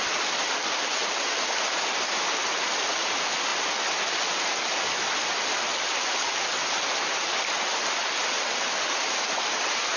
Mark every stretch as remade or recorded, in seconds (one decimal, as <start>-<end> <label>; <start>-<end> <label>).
0.0-10.0 recorded